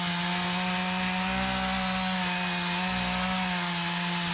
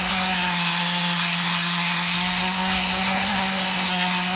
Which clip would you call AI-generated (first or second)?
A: second